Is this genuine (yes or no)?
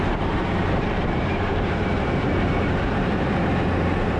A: no